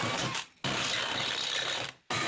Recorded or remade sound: recorded